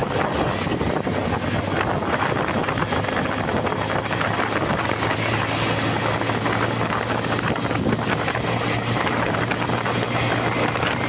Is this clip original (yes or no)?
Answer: yes